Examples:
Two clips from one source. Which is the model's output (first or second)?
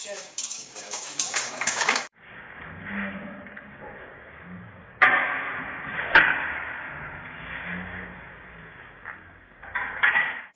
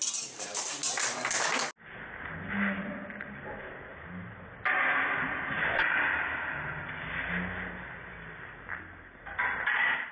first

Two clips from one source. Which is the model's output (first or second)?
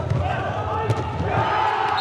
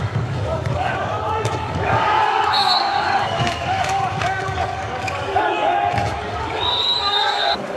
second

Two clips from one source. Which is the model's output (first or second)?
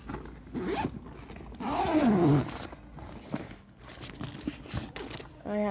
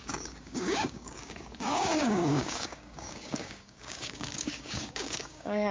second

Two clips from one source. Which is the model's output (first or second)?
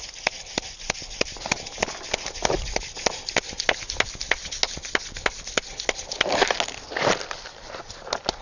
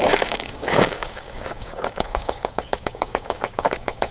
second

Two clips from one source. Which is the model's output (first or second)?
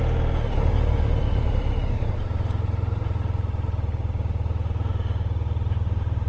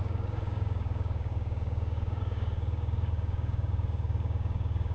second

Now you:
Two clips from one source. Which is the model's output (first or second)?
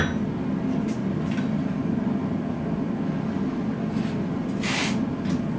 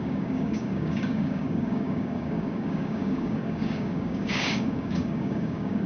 second